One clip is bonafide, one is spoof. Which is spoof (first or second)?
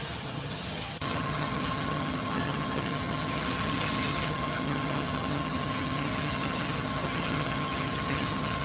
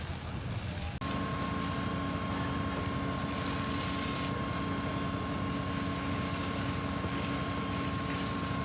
first